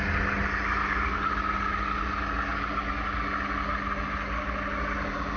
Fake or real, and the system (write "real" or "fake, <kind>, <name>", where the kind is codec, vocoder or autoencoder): real